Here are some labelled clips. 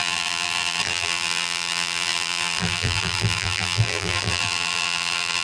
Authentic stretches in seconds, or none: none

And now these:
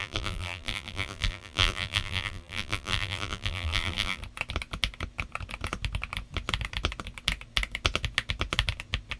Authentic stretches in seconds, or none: 4.2-9.2

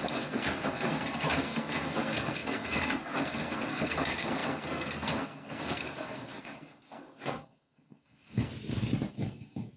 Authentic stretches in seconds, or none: 8.5-9.1

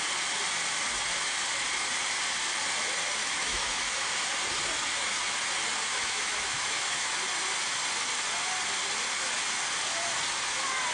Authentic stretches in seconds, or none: 0.0-3.2; 4.1-5.9; 7.2-10.9

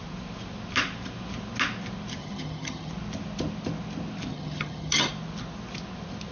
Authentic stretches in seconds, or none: 0.0-2.2; 2.9-4.3; 5.1-6.3

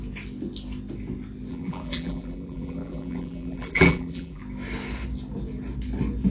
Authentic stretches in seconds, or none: 0.0-1.5; 4.4-6.3

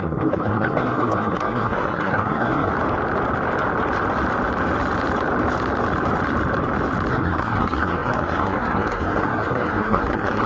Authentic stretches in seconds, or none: 2.7-7.1